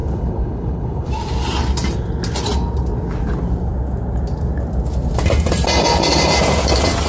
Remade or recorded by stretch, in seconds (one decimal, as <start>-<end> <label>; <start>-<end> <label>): 0.0-1.1 remade; 1.1-7.1 recorded